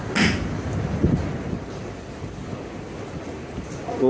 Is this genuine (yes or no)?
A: yes